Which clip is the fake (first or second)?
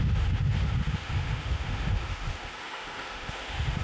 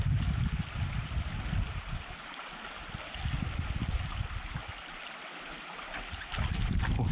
first